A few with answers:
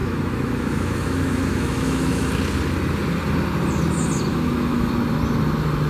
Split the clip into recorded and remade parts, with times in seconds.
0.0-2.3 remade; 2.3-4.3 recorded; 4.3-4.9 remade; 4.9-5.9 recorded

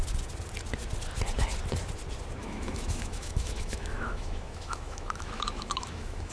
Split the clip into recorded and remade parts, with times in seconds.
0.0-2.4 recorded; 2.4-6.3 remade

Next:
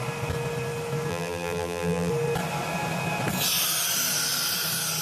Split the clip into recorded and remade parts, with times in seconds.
0.0-1.1 recorded; 1.1-2.1 remade; 2.1-5.0 recorded

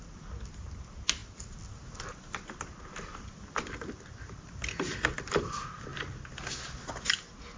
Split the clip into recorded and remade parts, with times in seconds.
0.0-7.6 recorded